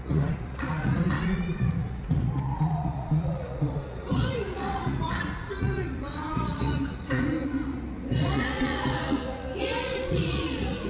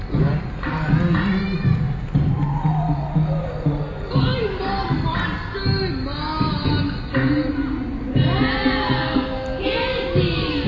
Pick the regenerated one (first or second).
first